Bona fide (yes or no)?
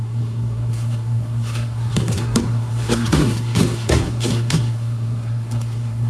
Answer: no